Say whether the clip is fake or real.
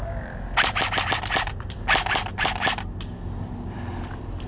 real